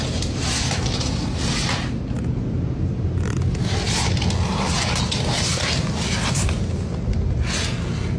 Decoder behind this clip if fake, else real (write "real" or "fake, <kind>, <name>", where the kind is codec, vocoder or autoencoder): real